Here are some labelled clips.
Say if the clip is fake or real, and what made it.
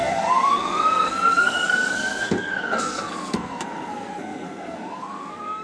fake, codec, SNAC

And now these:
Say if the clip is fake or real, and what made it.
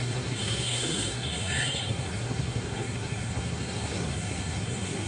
fake, codec, SNAC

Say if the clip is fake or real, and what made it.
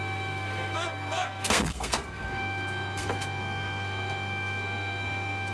fake, codec, SNAC